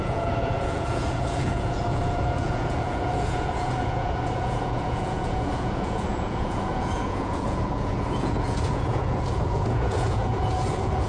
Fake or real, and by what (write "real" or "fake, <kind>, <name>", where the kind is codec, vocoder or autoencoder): fake, vocoder, Vocos